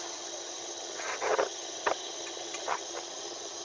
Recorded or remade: remade